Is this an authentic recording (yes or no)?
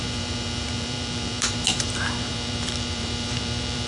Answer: no